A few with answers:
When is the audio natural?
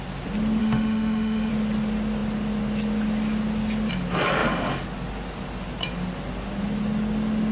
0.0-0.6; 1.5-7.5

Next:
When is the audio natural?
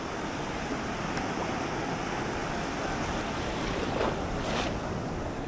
0.0-5.5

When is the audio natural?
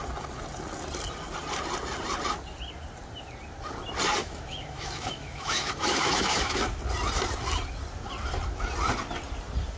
0.0-4.2; 6.8-9.8